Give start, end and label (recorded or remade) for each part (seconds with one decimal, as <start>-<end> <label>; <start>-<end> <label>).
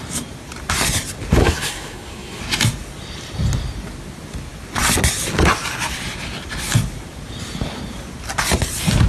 0.0-1.4 recorded; 1.4-2.4 remade; 2.4-9.1 recorded